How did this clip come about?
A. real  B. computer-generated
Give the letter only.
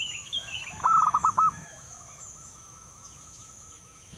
B